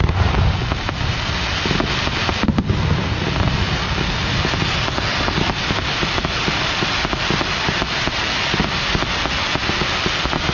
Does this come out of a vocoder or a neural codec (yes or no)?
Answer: no